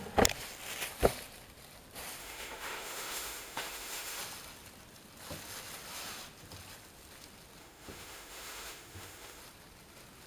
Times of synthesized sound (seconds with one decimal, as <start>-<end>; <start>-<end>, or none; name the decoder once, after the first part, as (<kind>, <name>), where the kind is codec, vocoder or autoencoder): 2.2-4.2 (autoencoder, DAC-VAE); 7.6-9.4